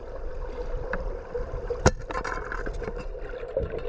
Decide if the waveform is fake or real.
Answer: real